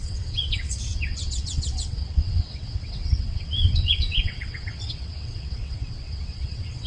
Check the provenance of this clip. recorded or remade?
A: remade